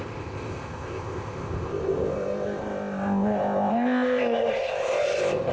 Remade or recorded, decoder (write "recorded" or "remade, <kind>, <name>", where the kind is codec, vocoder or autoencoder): remade, codec, ZipCodec